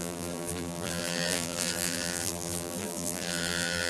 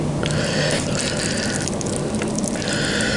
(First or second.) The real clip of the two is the second